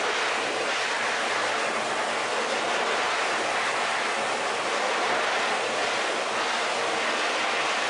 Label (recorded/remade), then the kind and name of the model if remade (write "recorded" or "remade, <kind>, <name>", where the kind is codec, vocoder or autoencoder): recorded